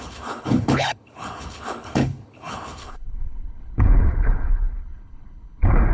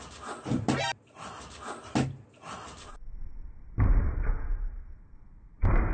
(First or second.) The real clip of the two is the second